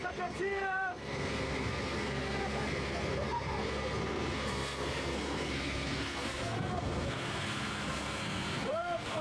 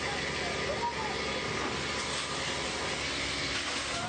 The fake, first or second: first